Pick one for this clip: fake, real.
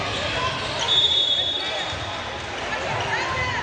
real